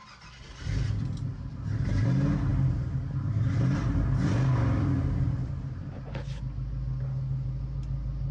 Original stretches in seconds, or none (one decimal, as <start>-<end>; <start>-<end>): 0.0-8.3